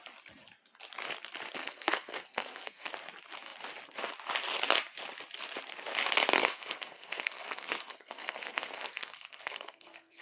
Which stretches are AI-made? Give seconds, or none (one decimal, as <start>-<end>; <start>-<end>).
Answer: 1.6-2.9; 6.4-10.2